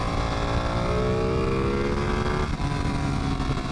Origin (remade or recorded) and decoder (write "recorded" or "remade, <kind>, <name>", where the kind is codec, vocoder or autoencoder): recorded